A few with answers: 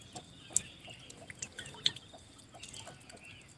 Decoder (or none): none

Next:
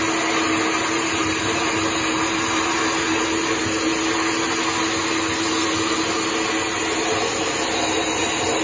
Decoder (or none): none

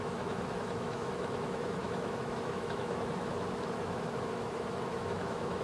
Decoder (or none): autoencoder, DAC-VAE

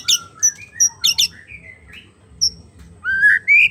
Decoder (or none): none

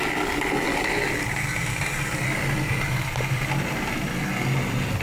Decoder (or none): none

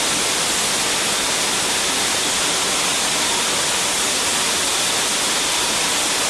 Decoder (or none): none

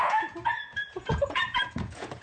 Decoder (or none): vocoder, Vocos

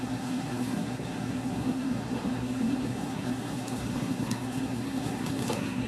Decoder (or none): codec, SNAC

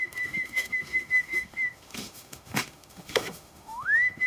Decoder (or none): autoencoder, DAC-VAE